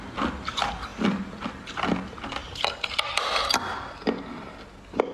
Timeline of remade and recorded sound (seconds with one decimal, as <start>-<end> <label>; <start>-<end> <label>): 0.0-0.9 recorded; 0.9-1.5 remade; 1.5-2.4 recorded; 2.4-3.1 remade; 3.1-5.1 recorded